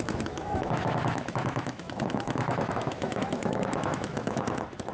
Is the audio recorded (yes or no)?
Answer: no